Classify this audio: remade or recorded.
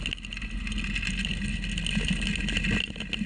recorded